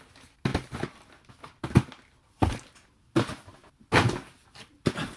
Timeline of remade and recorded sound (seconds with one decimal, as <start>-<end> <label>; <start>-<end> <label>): 0.0-5.2 recorded